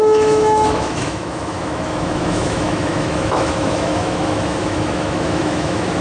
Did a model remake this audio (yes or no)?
yes